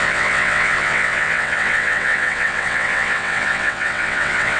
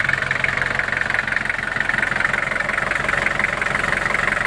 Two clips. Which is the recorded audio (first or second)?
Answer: second